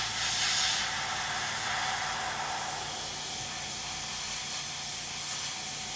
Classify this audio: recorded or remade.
recorded